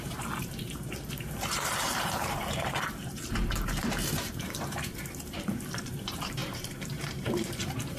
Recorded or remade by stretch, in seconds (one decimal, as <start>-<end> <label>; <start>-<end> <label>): 0.0-8.0 remade